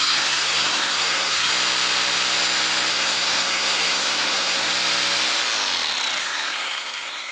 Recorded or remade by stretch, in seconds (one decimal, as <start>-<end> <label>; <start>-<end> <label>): 0.0-1.5 remade; 1.5-2.9 recorded; 2.9-4.7 remade; 4.7-6.2 recorded; 6.2-7.3 remade